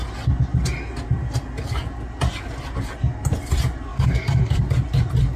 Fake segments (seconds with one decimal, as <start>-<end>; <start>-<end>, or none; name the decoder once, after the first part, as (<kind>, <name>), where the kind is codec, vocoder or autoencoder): 3.9-4.6 (codec, DAC)